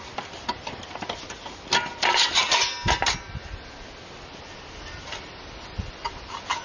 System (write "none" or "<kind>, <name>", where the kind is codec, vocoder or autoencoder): none